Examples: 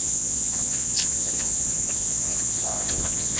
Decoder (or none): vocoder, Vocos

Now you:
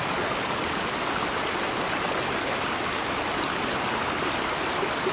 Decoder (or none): none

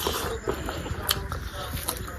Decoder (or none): none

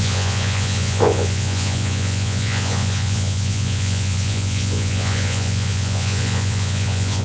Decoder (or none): vocoder, Vocos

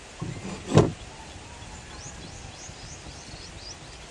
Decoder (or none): none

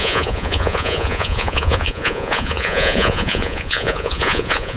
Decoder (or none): vocoder, Vocos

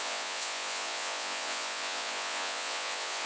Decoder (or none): vocoder, Vocos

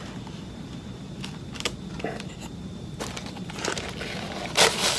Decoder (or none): none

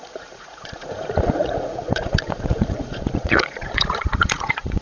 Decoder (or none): vocoder, Vocos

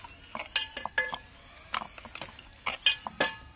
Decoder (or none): none